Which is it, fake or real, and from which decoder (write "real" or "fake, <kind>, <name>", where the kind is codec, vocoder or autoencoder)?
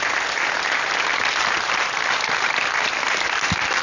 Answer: real